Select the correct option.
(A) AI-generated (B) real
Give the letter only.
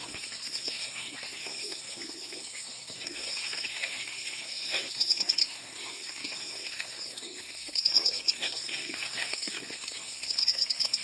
A